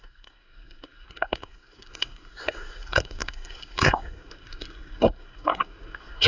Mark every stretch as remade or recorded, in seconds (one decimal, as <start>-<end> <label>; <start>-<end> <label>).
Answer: 0.0-6.3 remade